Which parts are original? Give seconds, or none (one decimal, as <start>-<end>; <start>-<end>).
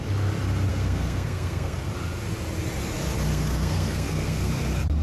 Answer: 0.0-0.7; 1.9-3.3; 4.5-5.0